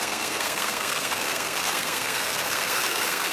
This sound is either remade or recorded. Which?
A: remade